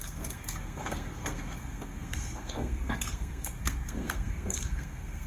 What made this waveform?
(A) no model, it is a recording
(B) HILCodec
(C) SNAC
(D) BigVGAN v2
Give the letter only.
C